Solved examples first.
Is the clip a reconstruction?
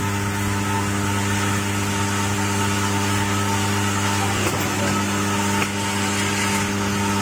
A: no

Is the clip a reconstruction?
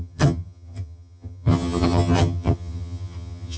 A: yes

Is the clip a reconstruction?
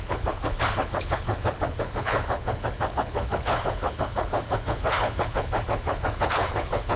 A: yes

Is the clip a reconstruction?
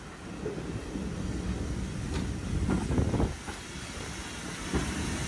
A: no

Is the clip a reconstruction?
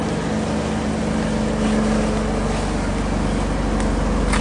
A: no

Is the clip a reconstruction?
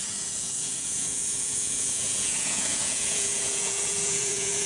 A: yes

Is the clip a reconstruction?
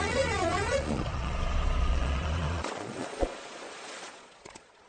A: yes